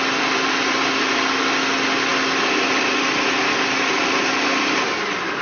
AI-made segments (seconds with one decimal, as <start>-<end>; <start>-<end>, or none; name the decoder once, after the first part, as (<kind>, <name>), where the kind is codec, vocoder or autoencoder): none